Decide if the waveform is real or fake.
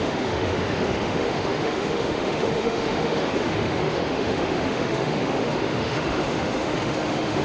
fake